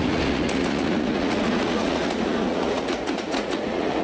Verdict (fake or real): fake